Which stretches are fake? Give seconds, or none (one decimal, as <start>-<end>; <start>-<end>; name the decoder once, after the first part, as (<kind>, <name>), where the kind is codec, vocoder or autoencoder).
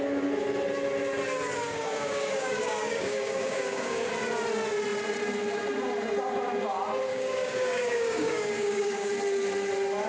1.7-4.1 (codec, DAC); 7.1-9.1